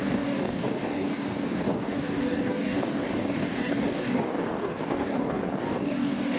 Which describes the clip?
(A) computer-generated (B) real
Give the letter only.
A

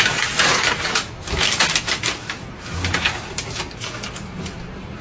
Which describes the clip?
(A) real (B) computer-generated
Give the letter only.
A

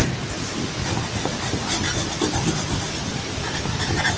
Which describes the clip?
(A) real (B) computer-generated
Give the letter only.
A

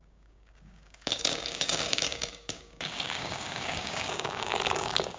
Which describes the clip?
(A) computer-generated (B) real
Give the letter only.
A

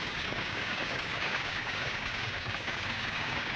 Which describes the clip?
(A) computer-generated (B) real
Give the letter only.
A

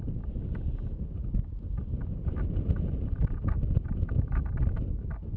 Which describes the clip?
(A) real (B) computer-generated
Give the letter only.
A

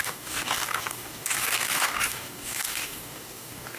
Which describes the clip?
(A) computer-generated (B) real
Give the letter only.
A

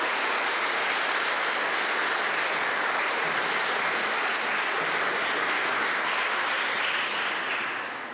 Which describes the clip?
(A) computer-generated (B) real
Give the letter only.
B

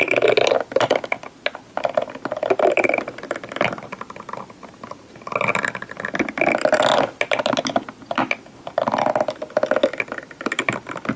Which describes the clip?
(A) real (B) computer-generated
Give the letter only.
A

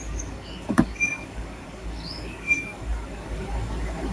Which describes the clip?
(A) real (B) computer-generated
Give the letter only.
B